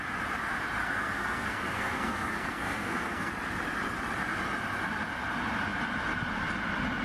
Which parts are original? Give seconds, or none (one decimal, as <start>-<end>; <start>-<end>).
0.0-0.8; 3.3-7.0